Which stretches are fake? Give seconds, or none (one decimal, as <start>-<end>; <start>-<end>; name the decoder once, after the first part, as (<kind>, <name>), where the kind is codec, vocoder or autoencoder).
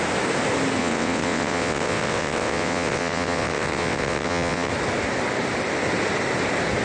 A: 0.8-4.7 (vocoder, WaveNeXt)